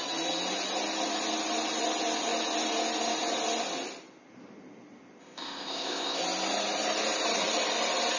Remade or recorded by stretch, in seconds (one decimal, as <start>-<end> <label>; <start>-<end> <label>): 0.0-5.2 recorded; 5.2-6.2 remade; 6.2-8.2 recorded